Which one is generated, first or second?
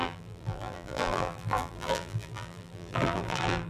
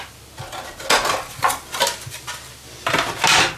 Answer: first